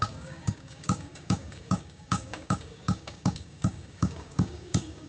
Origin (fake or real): fake